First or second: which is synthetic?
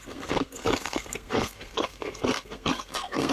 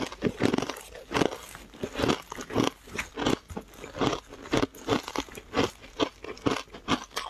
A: first